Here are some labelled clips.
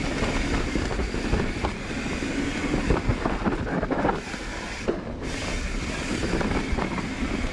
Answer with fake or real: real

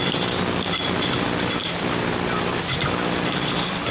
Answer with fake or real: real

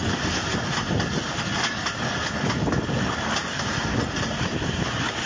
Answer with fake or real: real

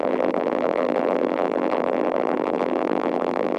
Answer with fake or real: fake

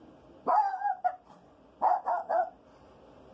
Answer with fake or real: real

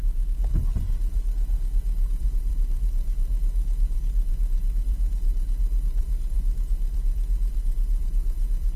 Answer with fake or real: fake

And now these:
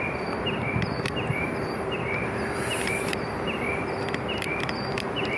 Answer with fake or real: fake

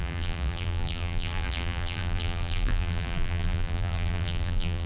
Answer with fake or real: fake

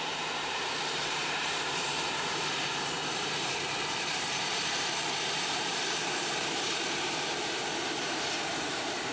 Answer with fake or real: fake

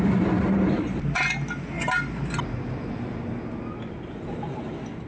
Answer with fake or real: real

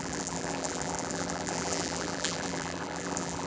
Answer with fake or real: fake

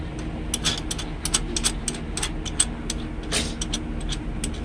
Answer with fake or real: real